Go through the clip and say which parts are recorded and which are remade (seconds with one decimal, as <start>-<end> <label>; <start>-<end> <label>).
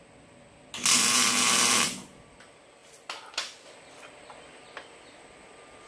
0.0-5.9 recorded